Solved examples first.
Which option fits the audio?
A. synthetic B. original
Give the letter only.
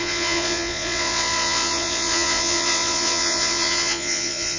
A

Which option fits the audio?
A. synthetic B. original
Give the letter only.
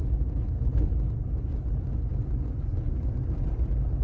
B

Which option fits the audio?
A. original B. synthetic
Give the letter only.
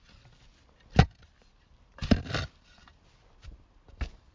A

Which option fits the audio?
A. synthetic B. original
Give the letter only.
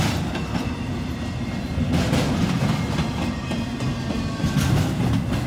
B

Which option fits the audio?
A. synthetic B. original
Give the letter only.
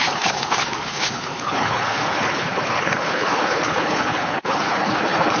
A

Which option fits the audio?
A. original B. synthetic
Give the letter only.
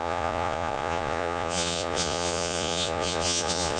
B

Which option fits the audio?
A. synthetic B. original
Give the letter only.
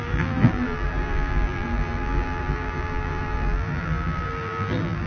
A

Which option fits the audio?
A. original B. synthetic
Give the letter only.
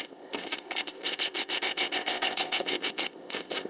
B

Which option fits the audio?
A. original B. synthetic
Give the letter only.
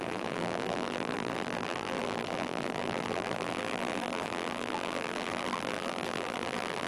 B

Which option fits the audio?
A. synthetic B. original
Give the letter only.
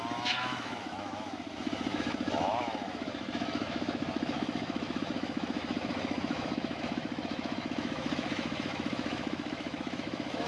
A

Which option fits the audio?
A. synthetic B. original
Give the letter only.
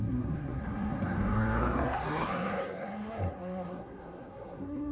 A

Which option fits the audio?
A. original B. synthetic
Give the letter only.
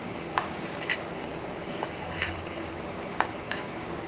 B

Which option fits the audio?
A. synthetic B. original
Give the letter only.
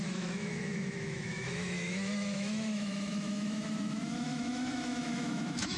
A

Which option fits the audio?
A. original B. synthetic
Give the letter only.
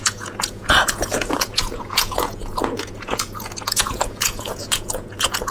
B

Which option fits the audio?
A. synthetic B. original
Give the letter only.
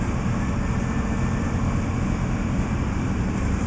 B